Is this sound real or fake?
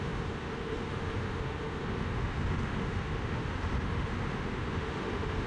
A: fake